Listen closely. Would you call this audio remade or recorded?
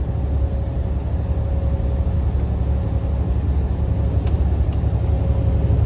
recorded